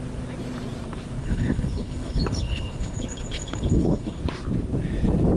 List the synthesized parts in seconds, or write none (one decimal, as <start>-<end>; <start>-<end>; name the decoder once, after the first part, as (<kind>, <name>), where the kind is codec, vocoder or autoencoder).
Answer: 1.2-4.2 (codec, HILCodec)